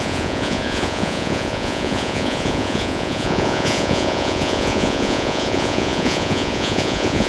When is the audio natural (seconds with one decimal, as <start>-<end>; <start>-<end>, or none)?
none